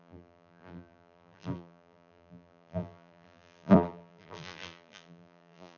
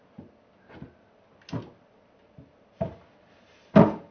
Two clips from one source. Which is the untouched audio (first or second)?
second